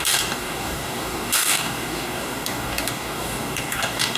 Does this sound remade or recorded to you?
remade